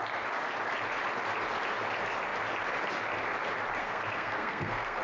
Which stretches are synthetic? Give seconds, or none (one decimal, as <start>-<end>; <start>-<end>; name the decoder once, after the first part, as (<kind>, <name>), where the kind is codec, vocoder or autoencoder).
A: 3.8-5.0 (codec, SNAC)